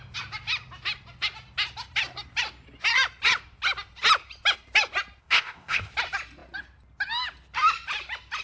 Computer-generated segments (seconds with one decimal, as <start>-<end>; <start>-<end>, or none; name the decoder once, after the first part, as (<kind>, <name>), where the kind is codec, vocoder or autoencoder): 5.2-5.9 (codec, ZipCodec)